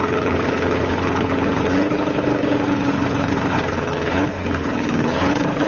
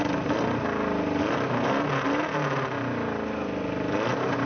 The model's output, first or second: first